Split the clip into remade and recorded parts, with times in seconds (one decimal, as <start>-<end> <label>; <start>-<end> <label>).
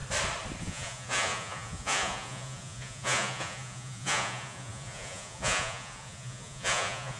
0.0-0.6 recorded; 0.6-7.2 remade